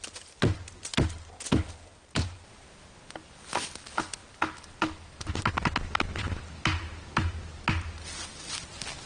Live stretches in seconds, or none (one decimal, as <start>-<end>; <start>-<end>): 0.0-9.1